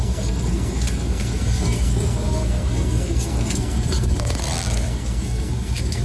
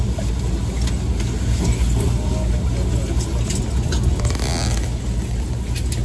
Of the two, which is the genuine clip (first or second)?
second